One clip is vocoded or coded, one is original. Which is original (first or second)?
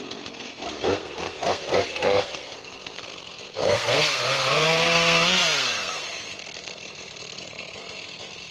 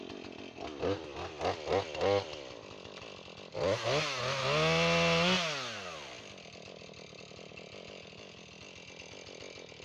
second